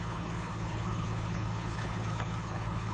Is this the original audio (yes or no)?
no